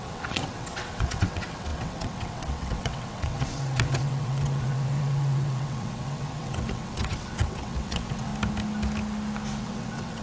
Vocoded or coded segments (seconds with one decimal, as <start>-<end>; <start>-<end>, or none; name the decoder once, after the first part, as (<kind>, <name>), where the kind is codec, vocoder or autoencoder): 0.0-8.3 (vocoder, WaveNeXt); 9.6-10.2

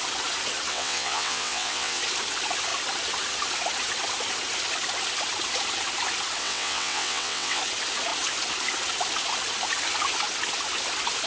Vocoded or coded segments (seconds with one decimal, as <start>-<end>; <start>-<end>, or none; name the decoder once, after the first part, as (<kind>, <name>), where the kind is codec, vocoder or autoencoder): 0.7-2.0 (vocoder, WaveNeXt); 6.4-7.6

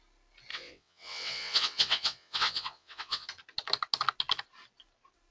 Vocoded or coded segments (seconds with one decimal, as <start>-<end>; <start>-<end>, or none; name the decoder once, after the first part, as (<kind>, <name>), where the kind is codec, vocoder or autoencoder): 0.5-3.3 (vocoder, WaveNeXt)

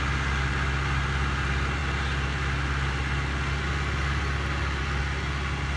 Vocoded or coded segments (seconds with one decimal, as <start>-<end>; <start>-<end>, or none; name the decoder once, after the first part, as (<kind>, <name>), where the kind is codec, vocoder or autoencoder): none

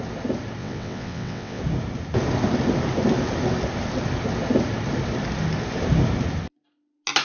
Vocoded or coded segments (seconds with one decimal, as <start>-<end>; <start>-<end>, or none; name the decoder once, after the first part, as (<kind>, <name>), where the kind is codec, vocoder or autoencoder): 0.6-1.6 (vocoder, WaveNeXt)

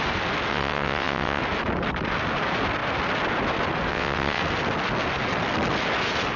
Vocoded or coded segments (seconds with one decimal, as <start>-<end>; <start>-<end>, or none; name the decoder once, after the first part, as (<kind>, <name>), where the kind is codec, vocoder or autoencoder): 0.5-1.4 (vocoder, WaveNeXt); 3.9-4.4